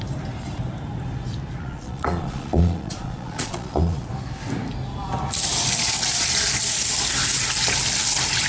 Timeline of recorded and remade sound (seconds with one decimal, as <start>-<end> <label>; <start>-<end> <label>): 0.0-1.6 recorded; 1.6-4.1 remade; 4.1-8.5 recorded